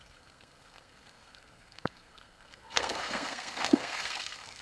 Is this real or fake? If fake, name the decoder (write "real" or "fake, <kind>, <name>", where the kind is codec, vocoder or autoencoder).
fake, codec, SNAC